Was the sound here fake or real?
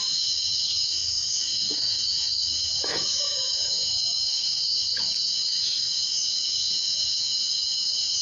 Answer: fake